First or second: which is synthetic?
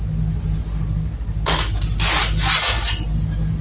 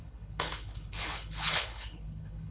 second